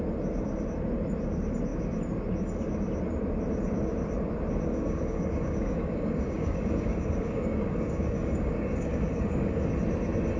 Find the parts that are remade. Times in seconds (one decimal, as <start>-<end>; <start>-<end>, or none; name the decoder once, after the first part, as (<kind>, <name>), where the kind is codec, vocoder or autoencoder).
4.7-9.7 (codec, DAC)

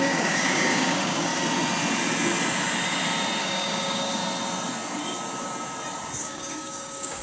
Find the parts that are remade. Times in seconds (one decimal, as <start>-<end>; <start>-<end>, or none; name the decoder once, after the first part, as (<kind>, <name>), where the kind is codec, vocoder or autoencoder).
0.0-1.3 (codec, DAC); 3.4-4.2; 6.2-7.2